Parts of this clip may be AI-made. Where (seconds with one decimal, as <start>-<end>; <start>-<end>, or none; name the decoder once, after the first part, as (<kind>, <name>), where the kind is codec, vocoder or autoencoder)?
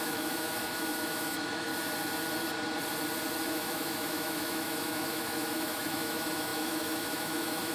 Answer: 0.0-1.7 (autoencoder, DAC-VAE); 3.5-7.7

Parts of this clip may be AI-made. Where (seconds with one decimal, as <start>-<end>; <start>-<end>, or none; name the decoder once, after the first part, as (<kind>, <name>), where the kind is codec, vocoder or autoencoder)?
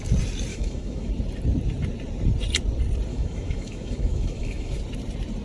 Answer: 0.5-1.1 (autoencoder, DAC-VAE); 3.1-4.8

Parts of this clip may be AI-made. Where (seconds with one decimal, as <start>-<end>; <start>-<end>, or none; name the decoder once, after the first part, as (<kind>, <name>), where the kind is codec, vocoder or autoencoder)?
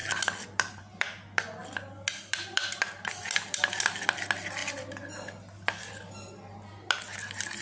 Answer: none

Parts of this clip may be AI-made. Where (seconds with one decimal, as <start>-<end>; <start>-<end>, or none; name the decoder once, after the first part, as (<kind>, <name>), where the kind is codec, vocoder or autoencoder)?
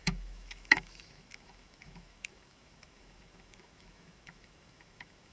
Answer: 0.0-5.3 (autoencoder, DAC-VAE)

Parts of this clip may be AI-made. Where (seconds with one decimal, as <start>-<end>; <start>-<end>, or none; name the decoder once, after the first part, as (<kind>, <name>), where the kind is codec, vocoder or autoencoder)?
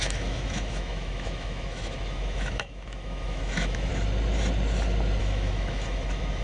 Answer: 0.0-3.9 (autoencoder, DAC-VAE); 5.2-6.4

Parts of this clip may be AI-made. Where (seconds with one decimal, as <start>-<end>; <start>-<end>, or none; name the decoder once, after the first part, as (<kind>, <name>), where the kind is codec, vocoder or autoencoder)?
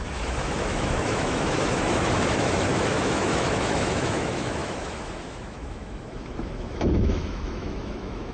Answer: 0.0-8.3 (autoencoder, DAC-VAE)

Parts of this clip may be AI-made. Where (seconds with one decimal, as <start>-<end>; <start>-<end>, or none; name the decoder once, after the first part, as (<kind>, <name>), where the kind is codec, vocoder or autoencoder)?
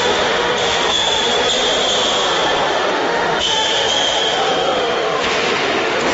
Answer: 0.0-1.2 (autoencoder, DAC-VAE); 2.7-6.1